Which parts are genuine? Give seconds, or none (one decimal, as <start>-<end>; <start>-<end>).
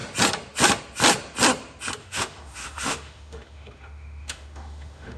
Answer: 0.0-2.0